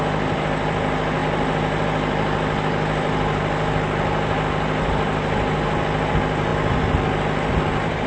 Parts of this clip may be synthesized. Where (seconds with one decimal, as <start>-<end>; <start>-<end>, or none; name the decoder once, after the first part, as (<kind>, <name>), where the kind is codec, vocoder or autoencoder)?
none